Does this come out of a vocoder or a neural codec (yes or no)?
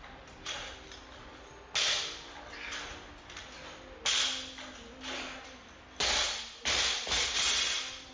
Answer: no